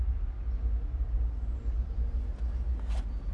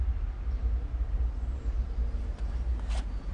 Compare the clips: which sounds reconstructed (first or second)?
second